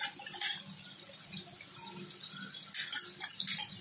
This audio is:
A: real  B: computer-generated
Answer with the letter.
A